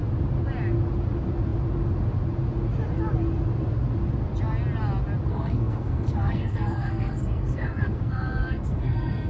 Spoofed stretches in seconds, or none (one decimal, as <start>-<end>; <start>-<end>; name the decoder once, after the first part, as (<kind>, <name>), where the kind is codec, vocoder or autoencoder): 5.3-9.3 (codec, SNAC)